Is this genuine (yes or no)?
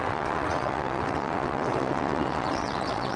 no